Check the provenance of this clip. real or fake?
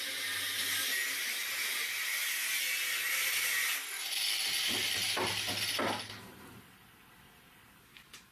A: real